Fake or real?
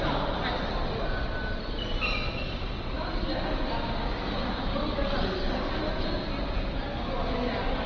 real